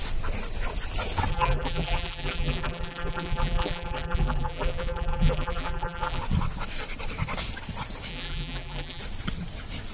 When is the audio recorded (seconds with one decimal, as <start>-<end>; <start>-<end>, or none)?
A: 0.0-1.3; 6.2-8.1; 9.0-9.9